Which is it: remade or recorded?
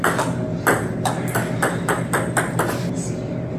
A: recorded